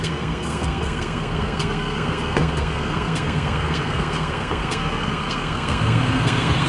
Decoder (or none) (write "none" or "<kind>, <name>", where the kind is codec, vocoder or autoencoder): codec, SNAC